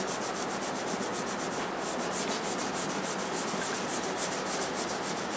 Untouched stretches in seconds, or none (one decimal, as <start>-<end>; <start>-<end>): 0.0-5.4